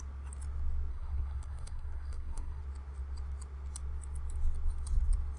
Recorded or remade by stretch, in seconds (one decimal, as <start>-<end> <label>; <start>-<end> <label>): 0.0-0.9 recorded; 0.9-2.6 remade; 2.6-5.4 recorded

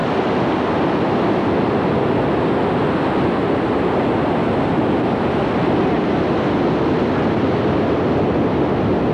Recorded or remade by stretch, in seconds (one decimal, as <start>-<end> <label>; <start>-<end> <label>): 0.0-9.1 recorded

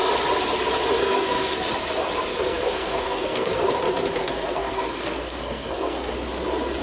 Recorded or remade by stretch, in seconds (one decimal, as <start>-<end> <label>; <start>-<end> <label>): 0.0-1.0 recorded; 1.0-1.7 remade; 1.7-2.3 recorded; 2.3-3.7 remade; 3.7-4.2 recorded; 4.2-6.1 remade; 6.1-6.8 recorded

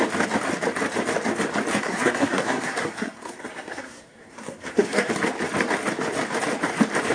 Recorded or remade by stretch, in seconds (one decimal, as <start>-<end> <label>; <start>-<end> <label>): 0.0-1.7 recorded; 1.7-5.1 remade; 5.1-7.1 recorded

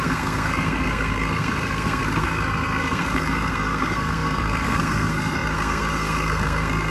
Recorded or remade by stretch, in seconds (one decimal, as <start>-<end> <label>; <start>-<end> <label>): 0.0-6.9 remade

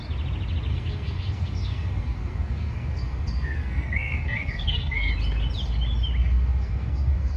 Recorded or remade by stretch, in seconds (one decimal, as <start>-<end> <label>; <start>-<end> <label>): 0.0-0.7 recorded; 0.7-5.1 remade; 5.1-6.2 recorded; 6.2-7.4 remade